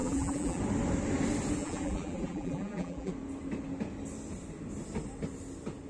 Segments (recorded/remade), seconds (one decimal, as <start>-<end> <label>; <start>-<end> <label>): 0.0-0.6 remade; 0.6-1.6 recorded; 1.6-3.1 remade; 3.1-5.9 recorded